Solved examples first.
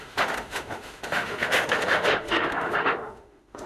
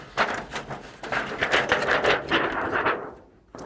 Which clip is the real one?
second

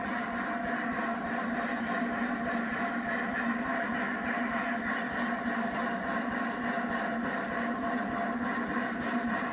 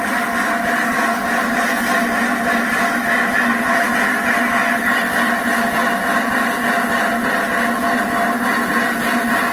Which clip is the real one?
second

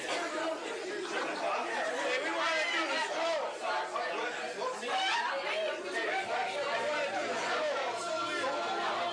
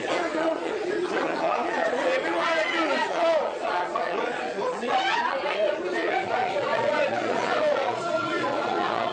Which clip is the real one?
first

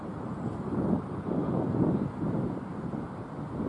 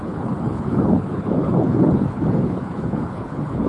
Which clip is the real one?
first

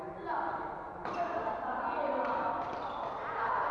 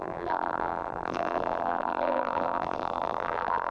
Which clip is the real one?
first